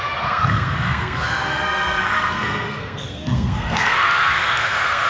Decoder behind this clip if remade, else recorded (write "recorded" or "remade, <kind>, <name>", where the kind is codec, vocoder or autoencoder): remade, codec, SNAC